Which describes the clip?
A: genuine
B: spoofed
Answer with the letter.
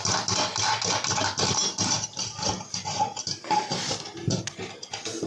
A